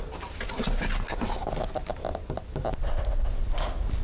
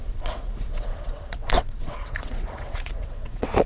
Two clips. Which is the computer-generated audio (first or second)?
second